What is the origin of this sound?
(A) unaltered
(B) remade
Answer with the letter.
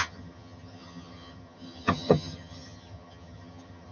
B